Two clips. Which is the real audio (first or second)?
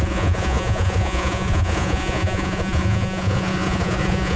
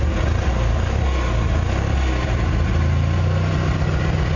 second